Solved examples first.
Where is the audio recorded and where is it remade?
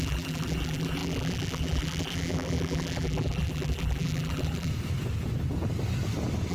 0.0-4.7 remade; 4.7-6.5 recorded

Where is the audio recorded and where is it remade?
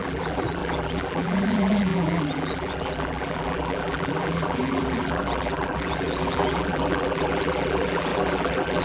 0.0-8.8 remade